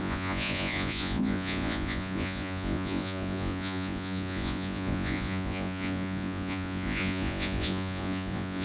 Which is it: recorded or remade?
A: remade